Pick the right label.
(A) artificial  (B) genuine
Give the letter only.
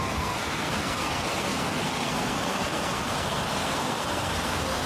A